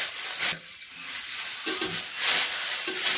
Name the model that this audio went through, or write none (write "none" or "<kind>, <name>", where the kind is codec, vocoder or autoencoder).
none